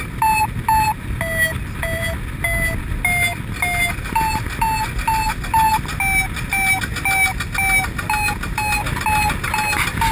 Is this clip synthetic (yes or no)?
no